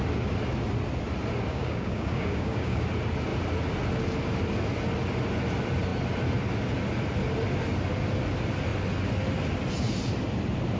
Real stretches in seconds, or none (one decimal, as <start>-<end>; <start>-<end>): 0.0-1.5; 2.8-10.8